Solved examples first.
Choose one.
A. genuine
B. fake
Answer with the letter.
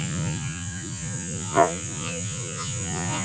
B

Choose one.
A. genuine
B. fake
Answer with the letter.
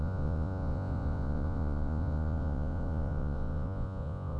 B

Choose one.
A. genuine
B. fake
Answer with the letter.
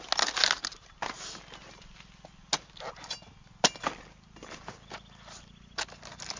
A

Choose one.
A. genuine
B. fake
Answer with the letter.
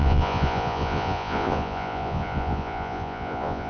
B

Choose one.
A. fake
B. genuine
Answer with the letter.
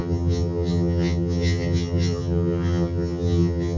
A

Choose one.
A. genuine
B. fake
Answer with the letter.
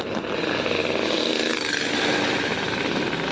A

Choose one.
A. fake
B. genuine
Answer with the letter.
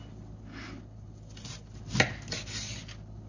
B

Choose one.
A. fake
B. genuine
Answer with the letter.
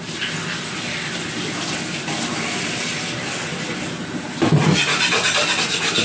B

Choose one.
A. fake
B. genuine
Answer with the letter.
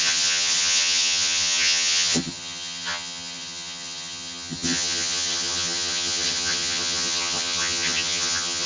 A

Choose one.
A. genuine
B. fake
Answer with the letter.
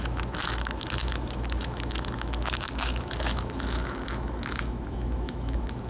B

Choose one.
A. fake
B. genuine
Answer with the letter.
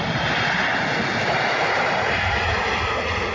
B